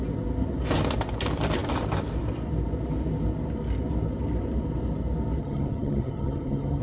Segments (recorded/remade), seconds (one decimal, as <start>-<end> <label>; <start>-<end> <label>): 0.0-5.4 recorded; 5.4-6.8 remade